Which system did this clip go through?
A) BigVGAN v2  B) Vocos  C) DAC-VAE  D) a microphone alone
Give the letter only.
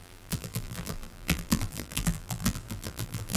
A